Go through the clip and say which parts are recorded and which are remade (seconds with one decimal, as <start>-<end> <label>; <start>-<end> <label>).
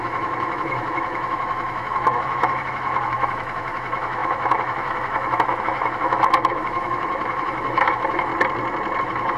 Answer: 0.0-8.3 remade; 8.3-9.0 recorded; 9.0-9.4 remade